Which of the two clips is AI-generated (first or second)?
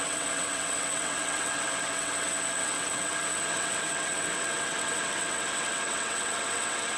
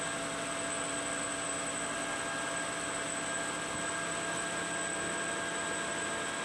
first